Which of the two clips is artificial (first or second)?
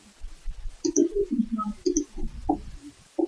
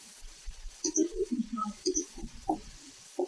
second